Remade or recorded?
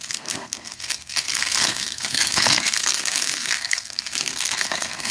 remade